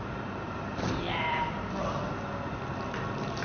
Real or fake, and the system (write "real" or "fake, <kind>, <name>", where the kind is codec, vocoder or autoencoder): real